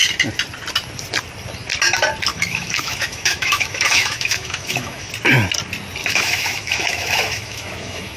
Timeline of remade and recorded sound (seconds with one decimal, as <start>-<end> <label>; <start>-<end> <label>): 0.0-2.3 recorded; 2.3-5.1 remade; 5.1-6.0 recorded; 6.0-8.2 remade